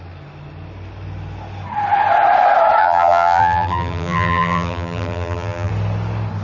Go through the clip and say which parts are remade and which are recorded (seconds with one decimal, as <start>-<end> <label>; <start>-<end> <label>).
0.0-2.8 recorded; 2.8-5.7 remade; 5.7-6.4 recorded